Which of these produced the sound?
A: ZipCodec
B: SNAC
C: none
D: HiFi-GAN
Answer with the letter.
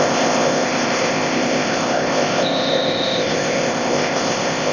A